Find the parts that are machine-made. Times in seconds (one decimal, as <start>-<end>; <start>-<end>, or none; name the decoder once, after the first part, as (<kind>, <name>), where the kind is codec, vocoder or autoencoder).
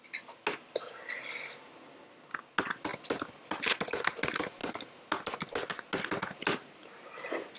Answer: none